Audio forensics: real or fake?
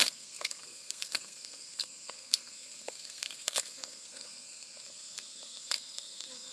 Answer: fake